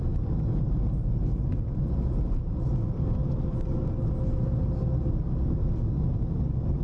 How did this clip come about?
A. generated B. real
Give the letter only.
B